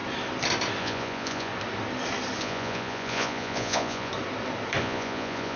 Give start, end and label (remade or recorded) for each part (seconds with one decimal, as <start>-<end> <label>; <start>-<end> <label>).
0.0-0.8 recorded; 0.8-1.5 remade; 1.5-2.4 recorded; 2.4-4.1 remade; 4.1-4.8 recorded; 4.8-5.6 remade

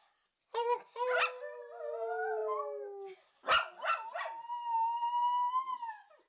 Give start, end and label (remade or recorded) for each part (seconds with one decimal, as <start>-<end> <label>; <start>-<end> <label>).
0.0-6.3 recorded